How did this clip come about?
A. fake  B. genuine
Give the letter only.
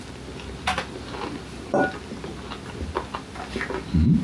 B